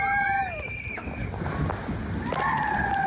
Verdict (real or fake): real